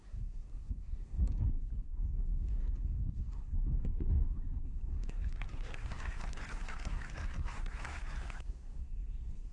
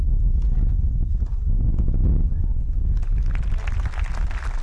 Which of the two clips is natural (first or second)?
second